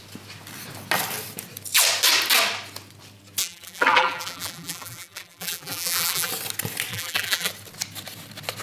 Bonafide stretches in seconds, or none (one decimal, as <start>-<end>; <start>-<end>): 0.0-3.4; 6.3-6.9; 7.5-8.6